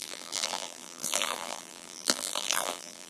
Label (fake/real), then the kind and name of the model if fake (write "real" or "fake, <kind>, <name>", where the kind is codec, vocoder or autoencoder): fake, vocoder, BigVGAN v2